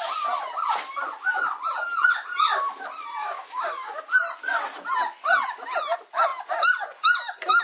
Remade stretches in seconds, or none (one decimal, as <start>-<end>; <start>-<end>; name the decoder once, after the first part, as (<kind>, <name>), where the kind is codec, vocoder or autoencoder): 3.2-4.0 (codec, DAC)